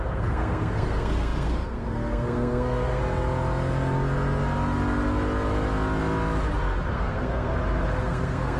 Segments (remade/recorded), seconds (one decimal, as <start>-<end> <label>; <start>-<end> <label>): 0.0-3.0 remade; 3.0-6.9 recorded; 6.9-7.5 remade; 7.5-8.0 recorded; 8.0-8.6 remade